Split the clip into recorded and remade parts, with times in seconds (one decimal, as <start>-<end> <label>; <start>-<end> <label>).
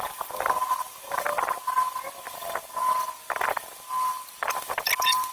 0.0-1.3 remade; 1.3-4.5 recorded; 4.5-5.3 remade